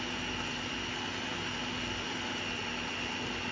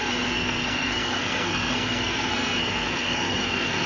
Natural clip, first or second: first